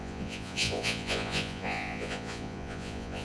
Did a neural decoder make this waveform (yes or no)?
yes